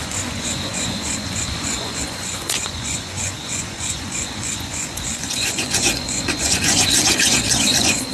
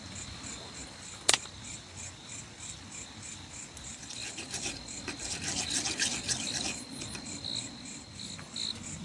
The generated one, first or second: first